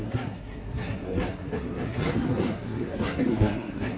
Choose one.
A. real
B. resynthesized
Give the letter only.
B